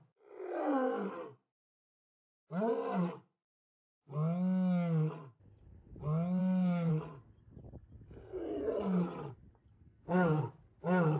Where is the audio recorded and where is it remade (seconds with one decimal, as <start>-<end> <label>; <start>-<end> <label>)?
0.0-6.4 recorded; 6.4-6.9 remade; 6.9-9.6 recorded; 9.6-10.4 remade; 10.4-11.2 recorded